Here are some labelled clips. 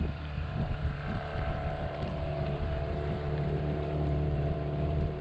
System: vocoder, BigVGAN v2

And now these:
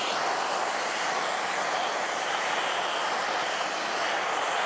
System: vocoder, BigVGAN v2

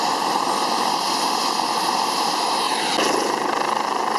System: none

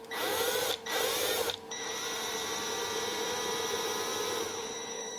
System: vocoder, BigVGAN v2